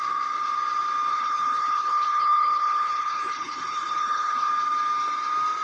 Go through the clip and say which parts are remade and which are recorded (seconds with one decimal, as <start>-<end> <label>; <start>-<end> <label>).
0.0-1.1 recorded; 1.1-4.5 remade; 4.5-5.6 recorded